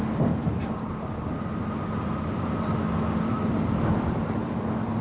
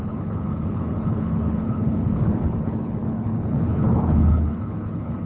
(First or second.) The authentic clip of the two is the first